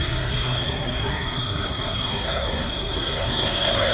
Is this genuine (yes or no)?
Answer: no